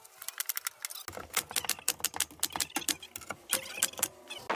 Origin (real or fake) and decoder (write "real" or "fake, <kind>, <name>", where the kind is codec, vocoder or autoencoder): real